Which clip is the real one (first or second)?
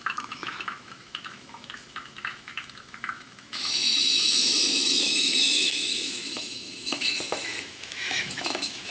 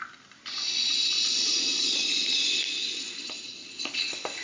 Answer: second